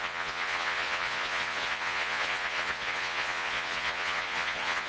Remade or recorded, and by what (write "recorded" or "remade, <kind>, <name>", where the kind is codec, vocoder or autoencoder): remade, vocoder, Vocos